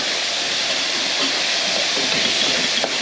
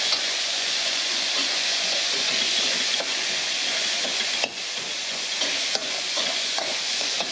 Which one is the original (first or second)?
first